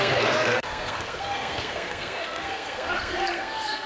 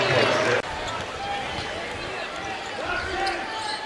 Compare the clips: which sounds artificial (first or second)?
first